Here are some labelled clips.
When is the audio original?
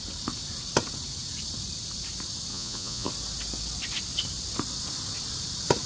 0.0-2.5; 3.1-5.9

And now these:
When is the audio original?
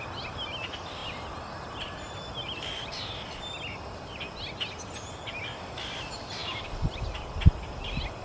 0.0-8.2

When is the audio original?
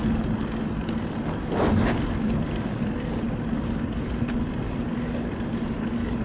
0.0-6.2